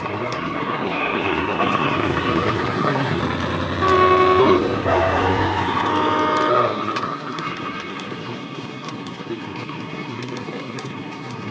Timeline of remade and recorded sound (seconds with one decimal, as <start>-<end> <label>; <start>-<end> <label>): 0.0-3.2 remade; 3.2-4.4 recorded; 4.4-5.9 remade; 5.9-6.5 recorded; 6.5-11.5 remade